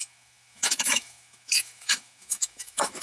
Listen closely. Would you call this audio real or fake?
fake